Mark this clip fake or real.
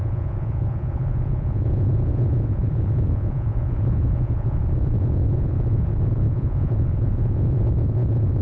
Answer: fake